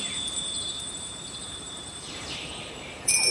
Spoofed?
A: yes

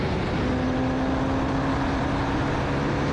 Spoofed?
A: no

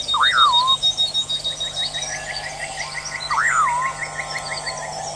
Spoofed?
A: no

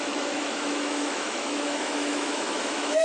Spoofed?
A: yes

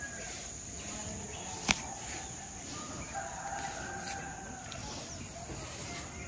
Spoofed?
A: no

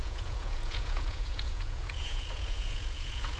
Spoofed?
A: yes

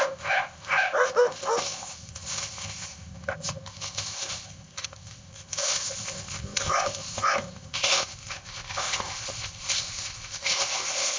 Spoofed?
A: yes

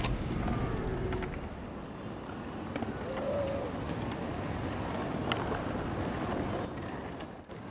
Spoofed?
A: no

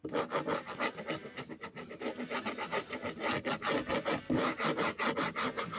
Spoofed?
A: no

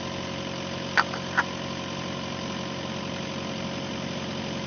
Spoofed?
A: no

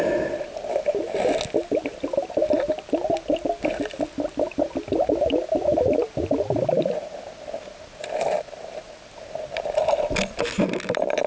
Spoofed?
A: no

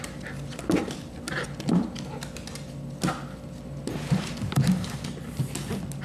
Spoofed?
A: no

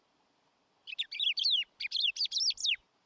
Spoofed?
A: no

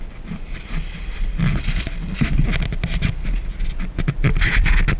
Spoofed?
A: no